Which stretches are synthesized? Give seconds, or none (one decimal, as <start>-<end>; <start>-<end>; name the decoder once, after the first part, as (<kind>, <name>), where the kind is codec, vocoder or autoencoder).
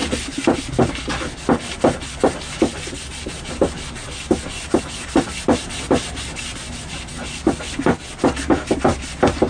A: none